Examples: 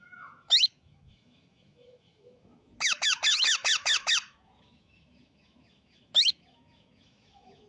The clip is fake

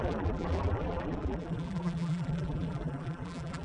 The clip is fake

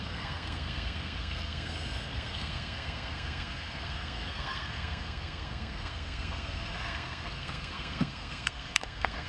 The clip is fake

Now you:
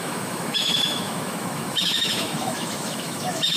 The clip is fake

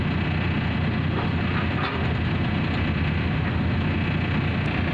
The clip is real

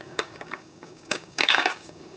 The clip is fake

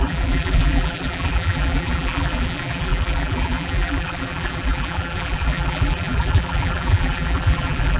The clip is fake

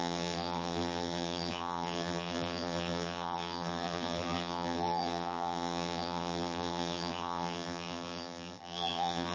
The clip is fake